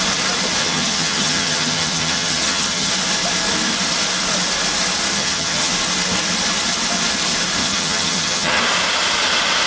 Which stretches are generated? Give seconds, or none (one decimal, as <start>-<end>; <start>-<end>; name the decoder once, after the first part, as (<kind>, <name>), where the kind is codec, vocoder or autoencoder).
0.6-2.9 (vocoder, HiFi-GAN); 5.1-5.7; 7.6-8.6